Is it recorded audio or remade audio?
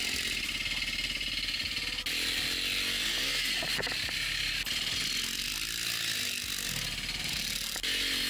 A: recorded